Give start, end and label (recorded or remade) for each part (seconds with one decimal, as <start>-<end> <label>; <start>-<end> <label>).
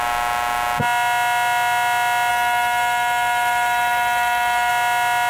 0.0-2.3 recorded; 2.3-4.7 remade; 4.7-5.3 recorded